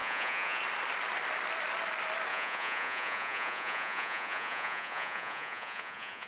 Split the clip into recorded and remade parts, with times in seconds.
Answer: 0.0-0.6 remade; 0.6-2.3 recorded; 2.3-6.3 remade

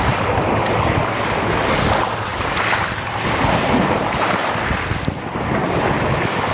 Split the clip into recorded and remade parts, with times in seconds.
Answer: 0.0-6.5 recorded

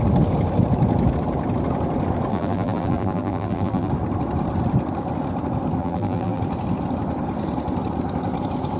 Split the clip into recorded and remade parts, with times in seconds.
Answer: 0.0-2.3 recorded; 2.3-3.9 remade; 3.9-5.8 recorded; 5.8-6.4 remade; 6.4-8.8 recorded